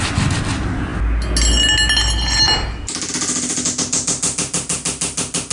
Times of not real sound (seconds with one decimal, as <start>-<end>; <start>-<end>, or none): none